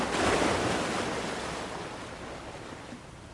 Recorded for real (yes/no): yes